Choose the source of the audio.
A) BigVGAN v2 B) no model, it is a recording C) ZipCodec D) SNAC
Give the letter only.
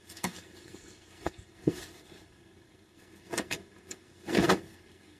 D